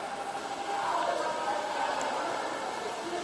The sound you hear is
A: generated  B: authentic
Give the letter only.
B